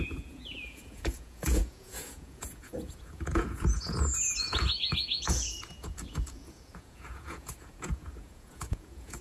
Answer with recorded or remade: remade